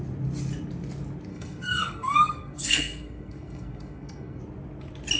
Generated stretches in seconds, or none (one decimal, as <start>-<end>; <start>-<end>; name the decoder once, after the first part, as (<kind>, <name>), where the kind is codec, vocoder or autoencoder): 1.3-4.4 (codec, SNAC)